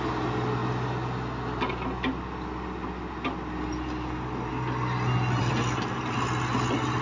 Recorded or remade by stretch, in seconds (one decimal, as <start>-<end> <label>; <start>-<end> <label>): 0.0-7.0 recorded